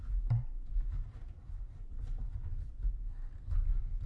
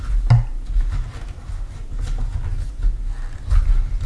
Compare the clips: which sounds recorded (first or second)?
second